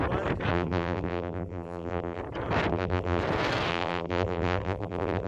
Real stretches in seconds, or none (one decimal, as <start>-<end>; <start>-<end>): 0.0-0.5; 2.2-2.7; 3.2-3.7